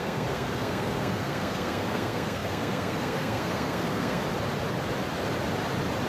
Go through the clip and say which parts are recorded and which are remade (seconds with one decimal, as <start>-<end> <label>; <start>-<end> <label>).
0.0-4.2 remade; 4.2-6.1 recorded